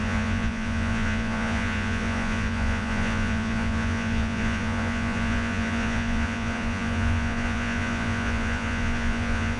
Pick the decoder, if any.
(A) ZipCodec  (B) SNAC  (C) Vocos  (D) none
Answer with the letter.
C